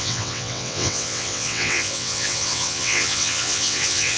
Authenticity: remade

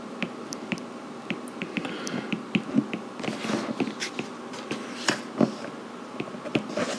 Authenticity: recorded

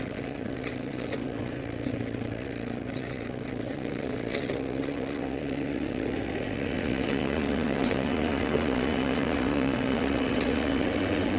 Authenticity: remade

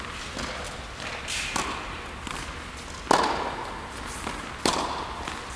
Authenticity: recorded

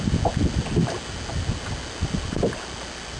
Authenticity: recorded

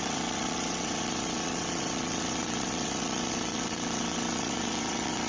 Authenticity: remade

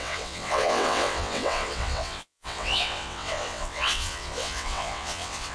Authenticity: remade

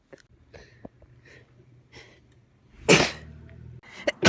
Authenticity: recorded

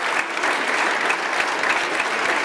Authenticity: recorded